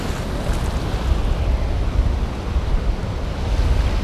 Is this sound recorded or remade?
recorded